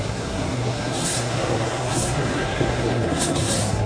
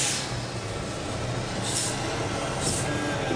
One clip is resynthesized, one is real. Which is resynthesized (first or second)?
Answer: first